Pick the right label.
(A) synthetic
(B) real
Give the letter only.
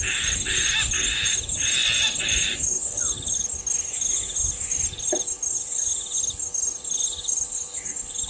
B